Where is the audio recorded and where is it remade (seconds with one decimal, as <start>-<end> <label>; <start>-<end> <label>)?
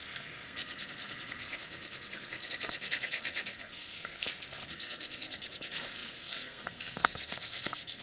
0.0-8.0 remade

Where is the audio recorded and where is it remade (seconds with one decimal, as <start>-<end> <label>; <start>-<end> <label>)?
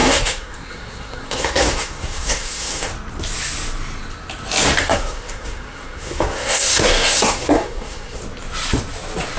0.0-2.9 remade; 2.9-4.8 recorded; 4.8-8.2 remade; 8.2-9.4 recorded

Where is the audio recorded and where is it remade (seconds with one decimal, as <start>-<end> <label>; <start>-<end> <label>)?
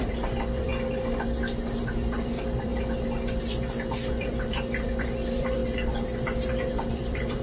0.0-0.7 remade; 0.7-1.8 recorded; 1.8-2.7 remade; 2.7-4.1 recorded; 4.1-5.6 remade; 5.6-6.9 recorded; 6.9-7.4 remade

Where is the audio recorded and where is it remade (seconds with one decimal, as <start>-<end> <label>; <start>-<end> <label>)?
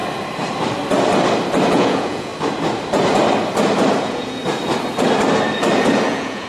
0.0-1.7 recorded; 1.7-2.3 remade; 2.3-4.0 recorded; 4.0-4.4 remade; 4.4-6.1 recorded; 6.1-6.5 remade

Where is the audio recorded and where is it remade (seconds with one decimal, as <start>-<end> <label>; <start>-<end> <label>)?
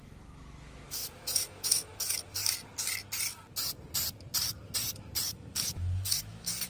0.0-2.4 remade; 2.4-5.3 recorded; 5.3-6.7 remade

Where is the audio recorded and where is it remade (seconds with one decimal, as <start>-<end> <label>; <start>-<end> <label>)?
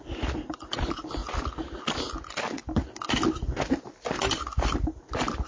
0.0-5.5 recorded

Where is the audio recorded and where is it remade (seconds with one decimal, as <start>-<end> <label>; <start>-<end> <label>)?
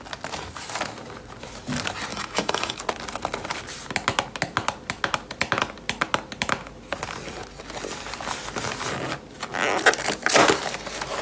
0.0-2.1 recorded; 2.1-2.8 remade; 2.8-11.2 recorded